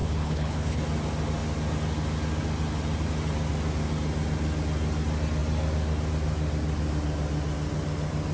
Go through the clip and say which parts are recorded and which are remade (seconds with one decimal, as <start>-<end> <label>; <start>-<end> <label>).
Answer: 0.0-0.8 remade; 0.8-8.3 recorded

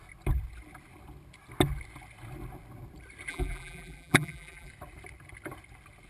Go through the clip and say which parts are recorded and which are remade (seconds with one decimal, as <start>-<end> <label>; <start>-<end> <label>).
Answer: 0.0-3.3 recorded; 3.3-4.7 remade; 4.7-6.1 recorded

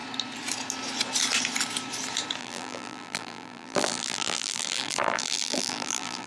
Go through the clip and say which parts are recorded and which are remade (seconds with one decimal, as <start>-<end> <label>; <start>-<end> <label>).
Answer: 0.0-2.4 recorded; 2.4-6.3 remade

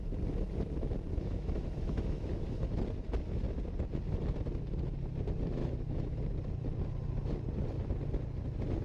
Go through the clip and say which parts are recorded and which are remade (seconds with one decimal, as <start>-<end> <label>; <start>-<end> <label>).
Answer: 0.0-1.1 recorded; 1.1-2.5 remade; 2.5-5.6 recorded; 5.6-6.2 remade; 6.2-8.8 recorded